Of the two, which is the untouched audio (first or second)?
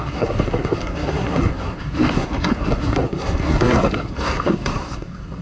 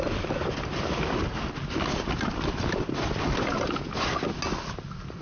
second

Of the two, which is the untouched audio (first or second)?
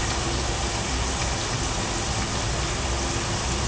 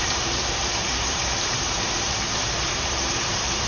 first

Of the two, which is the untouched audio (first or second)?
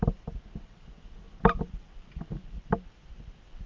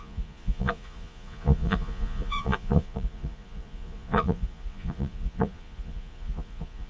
first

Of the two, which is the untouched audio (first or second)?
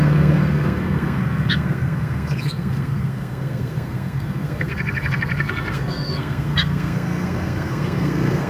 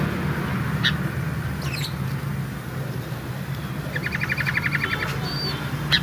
second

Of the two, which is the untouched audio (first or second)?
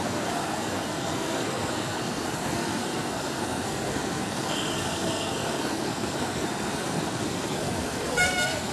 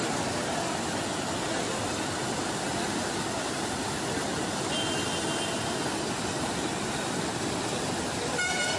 second